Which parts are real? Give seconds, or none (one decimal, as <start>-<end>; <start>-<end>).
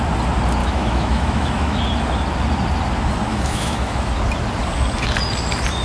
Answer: 0.0-0.6; 1.8-3.3; 4.1-5.8